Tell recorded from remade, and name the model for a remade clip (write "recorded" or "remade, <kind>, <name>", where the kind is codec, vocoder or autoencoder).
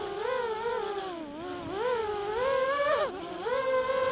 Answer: recorded